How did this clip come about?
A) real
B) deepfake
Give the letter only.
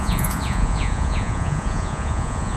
B